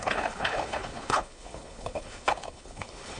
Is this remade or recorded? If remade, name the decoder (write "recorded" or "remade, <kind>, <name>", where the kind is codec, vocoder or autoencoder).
remade, codec, HILCodec